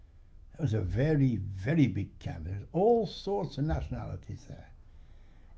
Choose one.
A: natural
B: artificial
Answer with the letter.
B